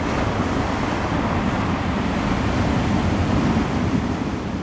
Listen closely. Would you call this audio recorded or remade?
recorded